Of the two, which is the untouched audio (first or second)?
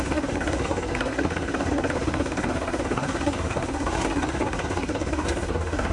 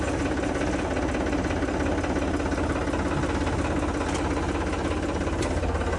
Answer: second